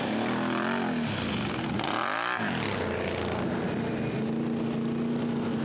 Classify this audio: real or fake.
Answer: real